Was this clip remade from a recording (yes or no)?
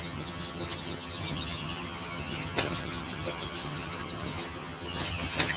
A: yes